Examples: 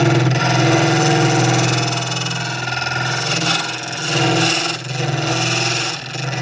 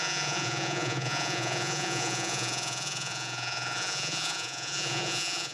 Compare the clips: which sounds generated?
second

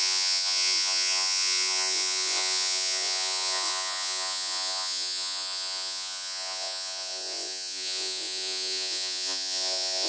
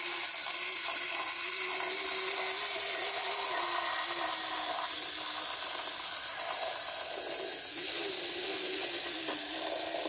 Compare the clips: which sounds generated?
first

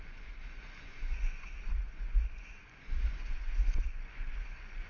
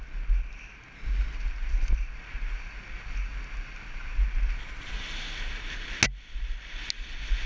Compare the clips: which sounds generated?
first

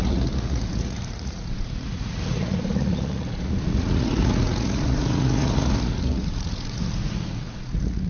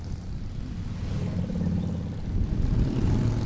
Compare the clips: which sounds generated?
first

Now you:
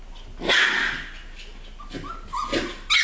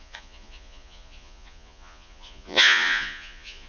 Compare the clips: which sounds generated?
second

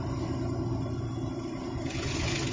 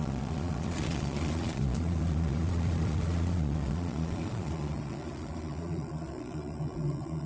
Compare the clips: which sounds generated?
second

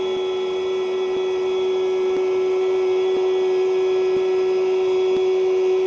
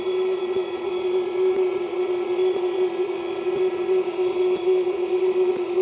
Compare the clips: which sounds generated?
second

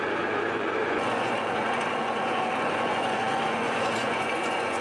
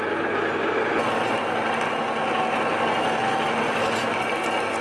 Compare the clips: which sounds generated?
first